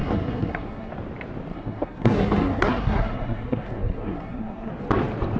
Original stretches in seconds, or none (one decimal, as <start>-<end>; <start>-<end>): 0.9-1.5; 4.7-5.4